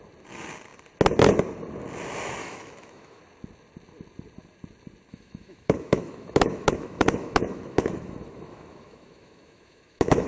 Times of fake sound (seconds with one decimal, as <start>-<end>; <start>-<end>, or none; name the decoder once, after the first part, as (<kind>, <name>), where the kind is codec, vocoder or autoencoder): 2.4-3.2 (autoencoder, DAC-VAE); 5.1-10.3